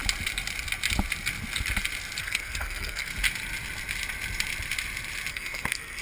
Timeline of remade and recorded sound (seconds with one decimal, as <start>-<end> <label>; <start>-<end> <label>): 0.0-2.2 recorded; 2.2-3.1 remade; 3.1-5.3 recorded; 5.3-6.0 remade